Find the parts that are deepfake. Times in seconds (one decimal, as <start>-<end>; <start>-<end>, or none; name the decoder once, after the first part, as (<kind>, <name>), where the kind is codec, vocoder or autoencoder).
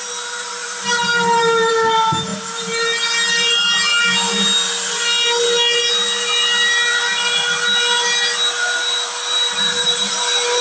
0.0-3.9 (vocoder, BigVGAN v2); 8.8-10.6